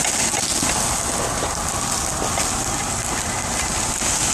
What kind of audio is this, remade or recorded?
recorded